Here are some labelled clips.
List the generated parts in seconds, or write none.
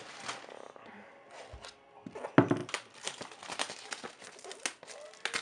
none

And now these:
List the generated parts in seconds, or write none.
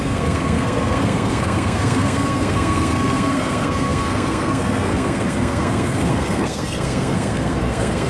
0.0-8.1 (codec, SNAC)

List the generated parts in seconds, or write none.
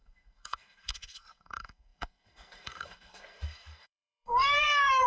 0.0-5.1 (codec, SNAC)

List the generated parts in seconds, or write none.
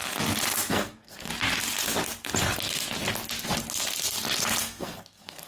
0.7-1.3 (codec, SNAC); 4.6-5.5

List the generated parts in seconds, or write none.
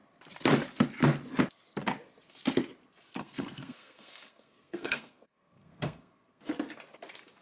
3.2-6.4 (codec, SNAC)